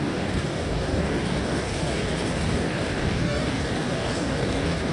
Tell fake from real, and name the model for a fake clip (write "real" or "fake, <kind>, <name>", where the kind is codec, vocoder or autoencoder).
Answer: fake, codec, DAC